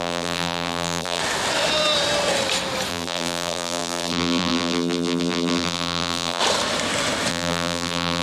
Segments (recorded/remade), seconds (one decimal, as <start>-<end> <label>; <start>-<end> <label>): 0.0-1.2 remade; 1.2-2.9 recorded; 2.9-6.4 remade; 6.4-7.3 recorded; 7.3-8.2 remade